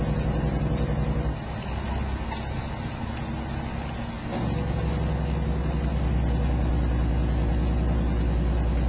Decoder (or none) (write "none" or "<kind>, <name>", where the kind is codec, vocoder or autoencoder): none